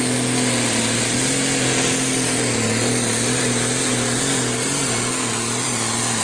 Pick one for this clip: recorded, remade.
recorded